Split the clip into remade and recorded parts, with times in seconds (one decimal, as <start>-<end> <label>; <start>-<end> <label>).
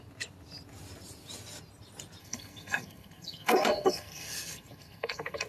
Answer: 0.0-2.2 recorded; 2.2-5.5 remade